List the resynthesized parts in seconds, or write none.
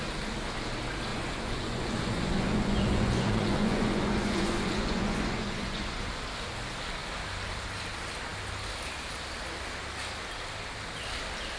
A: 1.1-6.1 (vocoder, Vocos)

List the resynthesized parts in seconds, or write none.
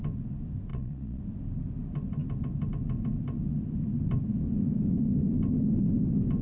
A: 0.7-1.2 (vocoder, Vocos)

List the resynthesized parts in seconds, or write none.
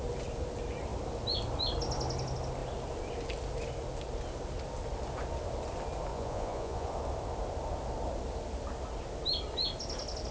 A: 6.1-6.9 (vocoder, Vocos)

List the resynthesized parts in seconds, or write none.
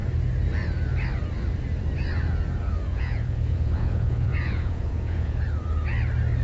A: 2.9-5.4 (vocoder, Vocos)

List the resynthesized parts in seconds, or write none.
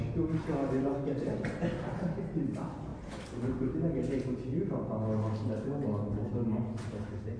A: none